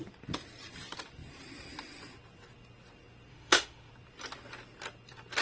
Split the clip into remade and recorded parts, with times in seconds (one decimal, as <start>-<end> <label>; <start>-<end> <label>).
0.0-3.3 recorded; 3.3-3.9 remade; 3.9-5.4 recorded